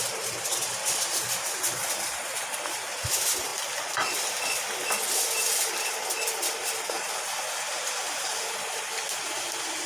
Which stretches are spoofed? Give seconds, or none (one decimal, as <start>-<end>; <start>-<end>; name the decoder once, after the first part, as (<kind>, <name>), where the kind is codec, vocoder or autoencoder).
none

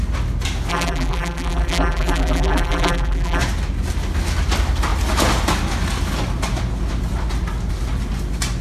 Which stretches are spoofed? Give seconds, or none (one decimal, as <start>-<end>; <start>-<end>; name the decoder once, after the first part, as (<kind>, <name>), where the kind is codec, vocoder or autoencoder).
0.7-3.4 (vocoder, BigVGAN v2)

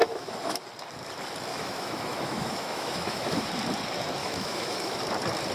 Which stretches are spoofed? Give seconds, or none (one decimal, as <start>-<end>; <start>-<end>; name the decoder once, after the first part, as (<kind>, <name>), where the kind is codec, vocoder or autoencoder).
0.0-0.6 (autoencoder, DAC-VAE); 1.5-3.5; 4.2-5.0

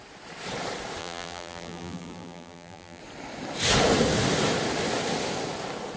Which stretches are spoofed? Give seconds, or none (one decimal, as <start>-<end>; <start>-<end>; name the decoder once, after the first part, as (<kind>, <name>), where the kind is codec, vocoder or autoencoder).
1.0-3.0 (vocoder, BigVGAN v2)

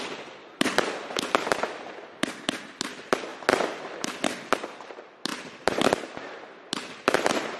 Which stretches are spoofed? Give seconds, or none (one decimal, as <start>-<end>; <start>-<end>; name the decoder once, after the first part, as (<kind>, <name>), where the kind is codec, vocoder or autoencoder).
none

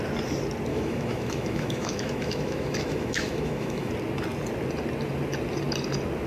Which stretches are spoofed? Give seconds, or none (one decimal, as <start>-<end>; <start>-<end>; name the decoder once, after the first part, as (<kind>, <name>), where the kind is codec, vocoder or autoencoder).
0.7-3.9 (autoencoder, DAC-VAE)